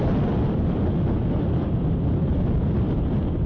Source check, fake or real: real